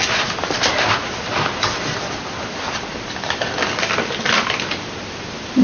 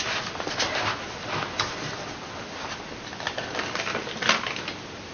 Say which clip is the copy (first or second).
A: first